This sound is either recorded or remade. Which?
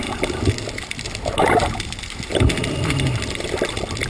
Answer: recorded